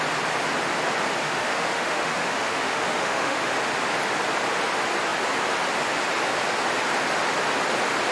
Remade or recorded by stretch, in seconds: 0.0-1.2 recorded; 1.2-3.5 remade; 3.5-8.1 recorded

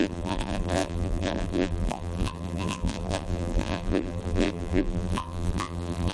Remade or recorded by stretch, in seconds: 0.0-6.1 remade

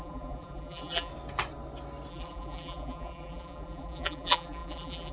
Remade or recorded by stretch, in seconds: 0.0-1.1 remade; 1.1-2.1 recorded; 2.1-5.1 remade

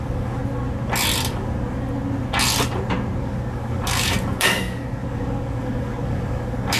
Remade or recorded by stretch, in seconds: 0.0-0.4 remade; 0.4-3.2 recorded; 3.2-6.8 remade